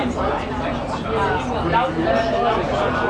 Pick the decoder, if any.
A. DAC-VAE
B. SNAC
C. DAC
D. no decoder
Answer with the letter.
D